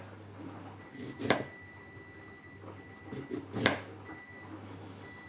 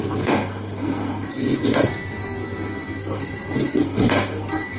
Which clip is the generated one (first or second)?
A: second